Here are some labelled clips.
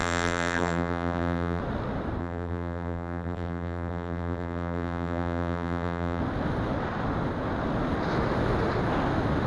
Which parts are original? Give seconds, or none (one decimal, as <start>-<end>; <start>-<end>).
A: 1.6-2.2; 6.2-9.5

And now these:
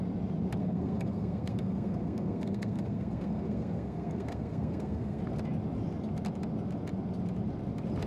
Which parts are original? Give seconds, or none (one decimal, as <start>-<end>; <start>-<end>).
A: 0.0-0.6; 5.2-8.1

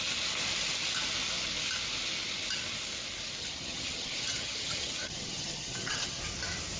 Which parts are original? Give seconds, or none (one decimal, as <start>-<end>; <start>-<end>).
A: 0.0-3.4; 6.2-6.8

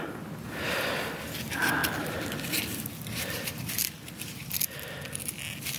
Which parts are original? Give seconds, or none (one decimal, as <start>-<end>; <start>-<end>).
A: 0.0-5.8